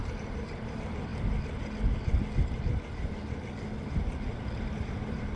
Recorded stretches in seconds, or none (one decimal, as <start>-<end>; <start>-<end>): 1.1-4.3